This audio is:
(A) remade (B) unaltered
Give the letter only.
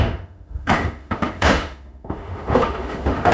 A